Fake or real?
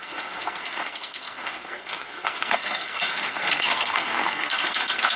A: fake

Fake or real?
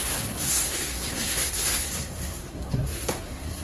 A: fake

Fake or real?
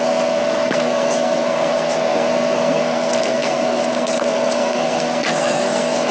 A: fake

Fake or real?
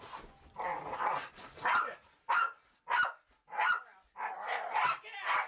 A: real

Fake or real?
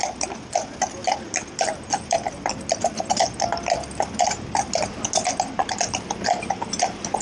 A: real